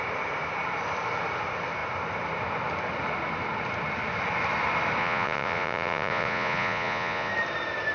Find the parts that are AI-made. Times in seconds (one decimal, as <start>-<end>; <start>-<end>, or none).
5.0-7.3